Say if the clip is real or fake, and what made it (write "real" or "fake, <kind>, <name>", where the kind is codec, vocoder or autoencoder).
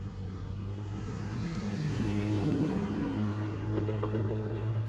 fake, codec, SNAC